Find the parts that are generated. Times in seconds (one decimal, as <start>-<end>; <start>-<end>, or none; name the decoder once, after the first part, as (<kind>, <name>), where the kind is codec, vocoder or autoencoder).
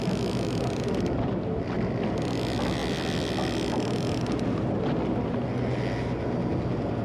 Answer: none